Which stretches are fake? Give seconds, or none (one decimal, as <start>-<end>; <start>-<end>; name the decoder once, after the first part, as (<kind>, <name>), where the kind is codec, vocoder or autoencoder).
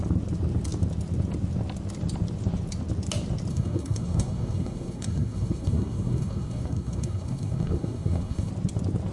3.5-8.5 (codec, SNAC)